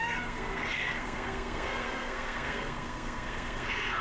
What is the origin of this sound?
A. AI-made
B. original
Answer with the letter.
A